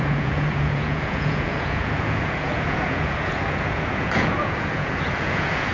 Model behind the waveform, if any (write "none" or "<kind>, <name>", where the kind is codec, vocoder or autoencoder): vocoder, Vocos